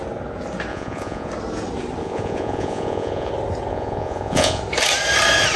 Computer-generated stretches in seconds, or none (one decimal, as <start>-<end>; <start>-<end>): 0.7-1.3; 2.0-3.3; 3.7-4.6